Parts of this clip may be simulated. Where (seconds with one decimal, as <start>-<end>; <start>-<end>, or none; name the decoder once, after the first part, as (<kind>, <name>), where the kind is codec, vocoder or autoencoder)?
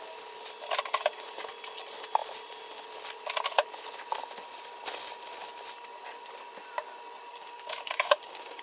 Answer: 7.3-8.6 (codec, DAC)